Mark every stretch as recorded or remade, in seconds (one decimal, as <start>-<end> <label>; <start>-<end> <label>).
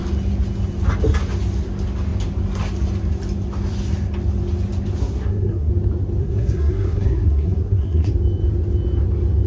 0.0-5.0 recorded; 5.0-5.7 remade; 5.7-6.2 recorded; 6.2-8.1 remade; 8.1-9.5 recorded